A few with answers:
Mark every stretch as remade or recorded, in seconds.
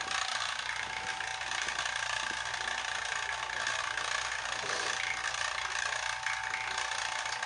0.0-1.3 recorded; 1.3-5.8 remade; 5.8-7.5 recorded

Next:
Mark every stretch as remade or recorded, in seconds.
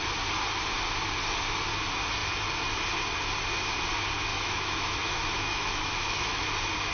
0.0-4.3 recorded; 4.3-6.4 remade; 6.4-6.9 recorded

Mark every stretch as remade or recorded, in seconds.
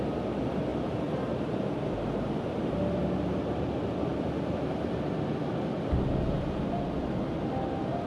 0.0-8.1 recorded